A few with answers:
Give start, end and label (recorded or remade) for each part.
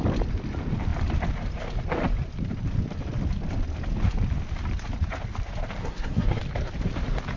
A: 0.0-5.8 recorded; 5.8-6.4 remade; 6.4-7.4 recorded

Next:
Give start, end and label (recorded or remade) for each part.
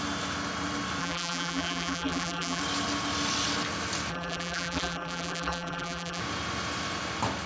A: 0.0-1.0 recorded; 1.0-2.6 remade; 2.6-4.1 recorded; 4.1-6.2 remade; 6.2-7.5 recorded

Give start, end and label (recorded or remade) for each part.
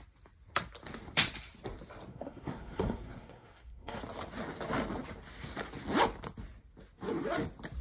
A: 0.0-2.1 recorded; 2.1-4.0 remade; 4.0-7.8 recorded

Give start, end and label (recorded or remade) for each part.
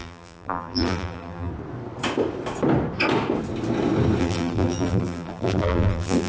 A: 0.0-1.5 remade; 1.5-4.2 recorded; 4.2-6.3 remade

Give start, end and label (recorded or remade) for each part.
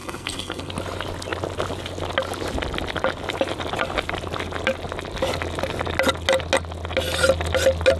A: 0.0-0.7 remade; 0.7-8.0 recorded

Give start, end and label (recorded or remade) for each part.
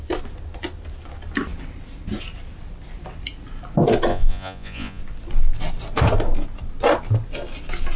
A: 0.0-4.1 recorded; 4.1-5.0 remade; 5.0-8.0 recorded